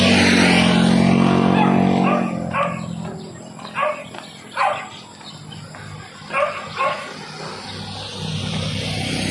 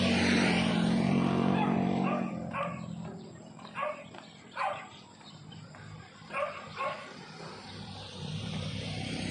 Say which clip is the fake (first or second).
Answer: second